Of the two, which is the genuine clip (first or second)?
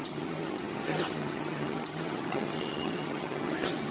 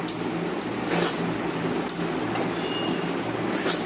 second